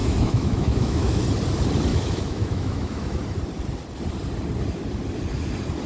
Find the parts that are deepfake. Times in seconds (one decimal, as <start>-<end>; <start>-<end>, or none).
0.0-1.2; 1.9-3.2